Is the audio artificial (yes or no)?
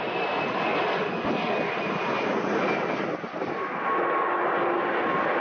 no